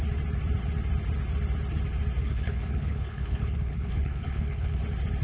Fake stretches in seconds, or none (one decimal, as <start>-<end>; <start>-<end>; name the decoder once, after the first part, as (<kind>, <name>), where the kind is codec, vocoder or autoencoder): 2.2-4.8 (codec, HILCodec)